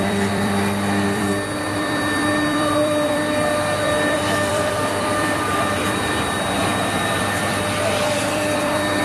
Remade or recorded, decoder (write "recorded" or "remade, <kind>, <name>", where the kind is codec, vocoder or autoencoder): remade, vocoder, BigVGAN v2